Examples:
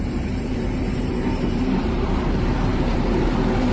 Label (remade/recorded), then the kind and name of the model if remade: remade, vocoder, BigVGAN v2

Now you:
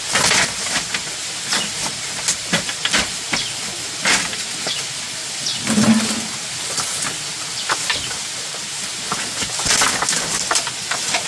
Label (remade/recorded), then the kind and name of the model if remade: recorded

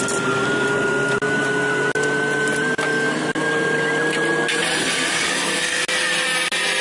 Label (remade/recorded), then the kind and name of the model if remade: recorded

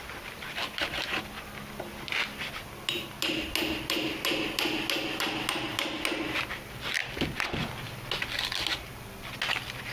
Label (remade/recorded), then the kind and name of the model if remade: recorded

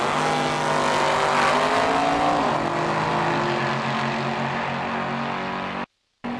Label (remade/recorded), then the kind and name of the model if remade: recorded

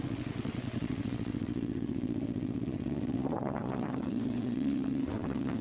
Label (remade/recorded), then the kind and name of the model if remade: remade, vocoder, WaveNeXt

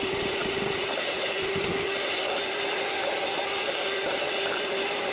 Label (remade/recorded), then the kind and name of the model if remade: recorded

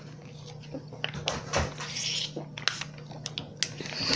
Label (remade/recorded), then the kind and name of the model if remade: recorded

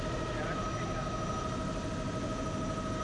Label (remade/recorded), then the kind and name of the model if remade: recorded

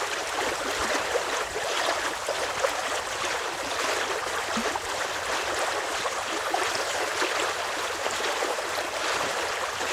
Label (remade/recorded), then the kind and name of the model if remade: recorded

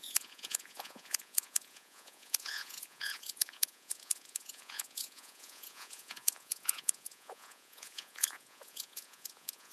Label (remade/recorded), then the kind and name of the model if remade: remade, vocoder, Vocos